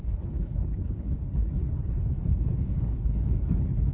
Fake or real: fake